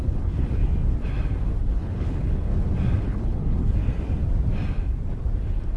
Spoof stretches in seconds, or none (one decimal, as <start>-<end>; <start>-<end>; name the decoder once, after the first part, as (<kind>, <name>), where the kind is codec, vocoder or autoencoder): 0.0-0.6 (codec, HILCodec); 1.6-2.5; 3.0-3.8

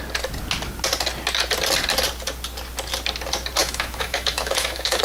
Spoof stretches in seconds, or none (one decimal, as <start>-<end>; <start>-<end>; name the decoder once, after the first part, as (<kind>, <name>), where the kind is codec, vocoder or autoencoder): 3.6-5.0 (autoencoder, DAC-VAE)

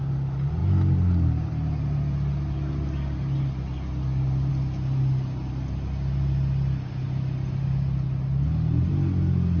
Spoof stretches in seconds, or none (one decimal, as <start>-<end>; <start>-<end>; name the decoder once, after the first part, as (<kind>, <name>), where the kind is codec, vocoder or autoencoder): none

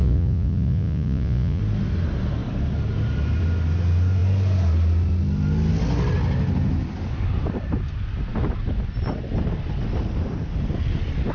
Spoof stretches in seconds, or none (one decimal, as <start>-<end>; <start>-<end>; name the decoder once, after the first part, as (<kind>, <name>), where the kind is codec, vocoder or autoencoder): 0.0-1.6 (vocoder, Vocos)